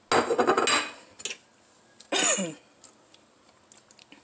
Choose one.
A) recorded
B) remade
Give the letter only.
A